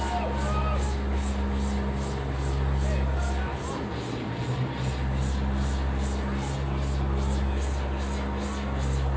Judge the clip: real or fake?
real